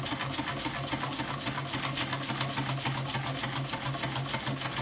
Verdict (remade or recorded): recorded